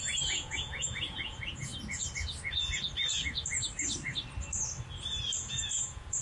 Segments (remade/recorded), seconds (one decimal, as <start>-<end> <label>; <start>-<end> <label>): 0.0-1.7 remade; 1.7-5.4 recorded; 5.4-6.2 remade